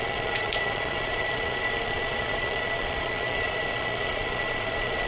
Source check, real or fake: fake